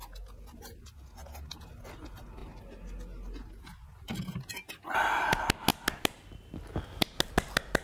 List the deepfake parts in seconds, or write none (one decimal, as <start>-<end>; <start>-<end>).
none